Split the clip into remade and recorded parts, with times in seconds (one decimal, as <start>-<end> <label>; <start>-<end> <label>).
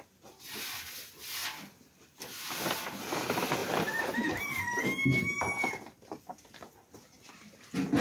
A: 0.0-3.6 recorded; 3.6-5.5 remade; 5.5-8.0 recorded